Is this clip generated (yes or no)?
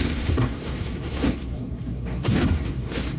yes